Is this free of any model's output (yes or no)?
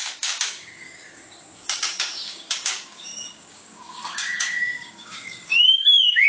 no